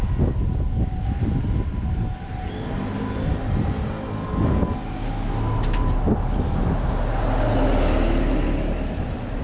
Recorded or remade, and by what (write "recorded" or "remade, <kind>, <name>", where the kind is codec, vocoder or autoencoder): recorded